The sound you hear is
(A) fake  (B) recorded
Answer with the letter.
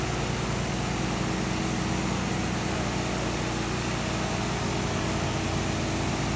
B